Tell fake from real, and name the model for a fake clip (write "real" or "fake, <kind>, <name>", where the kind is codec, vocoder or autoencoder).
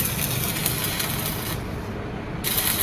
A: real